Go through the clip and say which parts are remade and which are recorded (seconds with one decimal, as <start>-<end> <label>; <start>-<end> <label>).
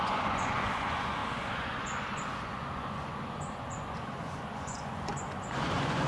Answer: 0.0-6.1 remade